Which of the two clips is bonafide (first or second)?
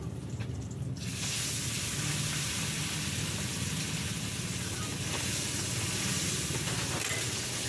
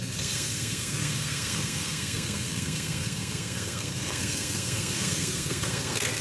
first